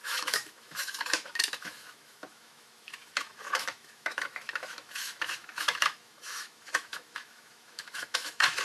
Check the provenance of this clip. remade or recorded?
remade